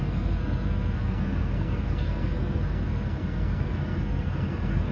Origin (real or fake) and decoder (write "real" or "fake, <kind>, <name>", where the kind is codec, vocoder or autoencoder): fake, codec, SNAC